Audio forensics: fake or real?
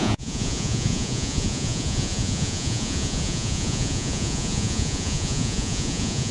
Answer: fake